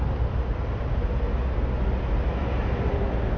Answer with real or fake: real